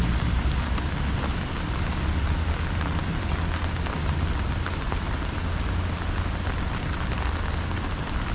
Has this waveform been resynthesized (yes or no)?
no